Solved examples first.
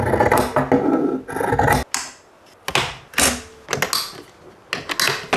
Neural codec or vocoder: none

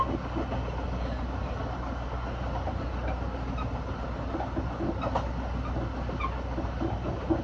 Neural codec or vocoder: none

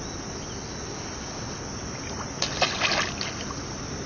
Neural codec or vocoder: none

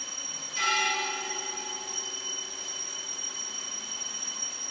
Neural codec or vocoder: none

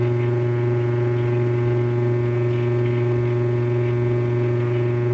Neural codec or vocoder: none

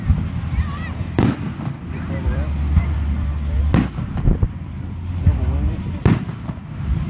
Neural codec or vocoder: vocoder, BigVGAN v2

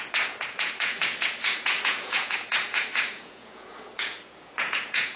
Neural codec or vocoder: vocoder, Vocos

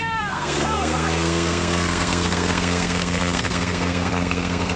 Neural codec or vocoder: codec, SNAC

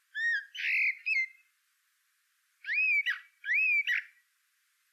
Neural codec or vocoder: none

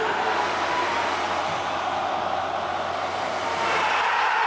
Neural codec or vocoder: none